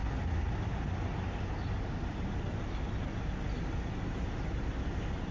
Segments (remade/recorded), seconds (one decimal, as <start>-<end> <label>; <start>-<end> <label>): 0.0-5.3 recorded